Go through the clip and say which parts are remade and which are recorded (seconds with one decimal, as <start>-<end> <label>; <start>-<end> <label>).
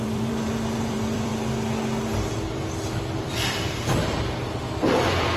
0.0-1.3 remade; 1.3-3.3 recorded; 3.3-4.0 remade; 4.0-4.6 recorded; 4.6-5.4 remade